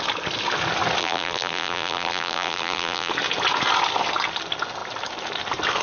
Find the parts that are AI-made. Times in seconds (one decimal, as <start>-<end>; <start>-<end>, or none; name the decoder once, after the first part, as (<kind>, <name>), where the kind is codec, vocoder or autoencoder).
1.0-3.1 (vocoder, BigVGAN v2)